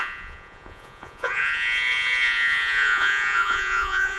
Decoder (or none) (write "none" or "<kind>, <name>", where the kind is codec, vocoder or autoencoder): vocoder, Vocos